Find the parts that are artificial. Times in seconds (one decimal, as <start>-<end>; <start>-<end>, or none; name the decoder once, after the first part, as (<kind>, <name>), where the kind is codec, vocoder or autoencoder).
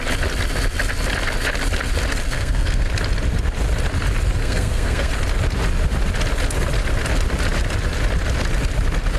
2.3-2.9 (codec, SNAC); 4.4-5.1